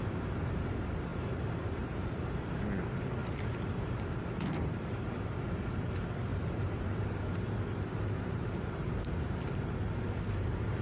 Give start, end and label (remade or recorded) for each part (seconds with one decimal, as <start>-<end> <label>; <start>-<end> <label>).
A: 0.0-1.1 recorded; 1.1-2.3 remade; 2.3-6.3 recorded; 6.3-9.4 remade; 9.4-10.8 recorded